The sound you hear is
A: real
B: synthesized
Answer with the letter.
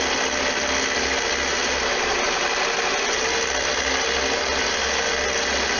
A